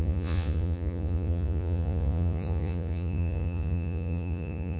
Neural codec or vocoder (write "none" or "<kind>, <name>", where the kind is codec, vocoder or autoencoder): vocoder, Vocos